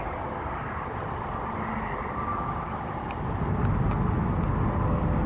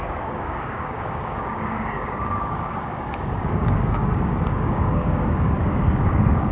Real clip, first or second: first